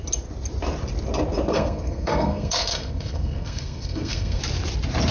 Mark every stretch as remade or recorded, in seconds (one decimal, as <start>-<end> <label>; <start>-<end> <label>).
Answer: 0.0-1.5 recorded; 1.5-4.4 remade; 4.4-5.1 recorded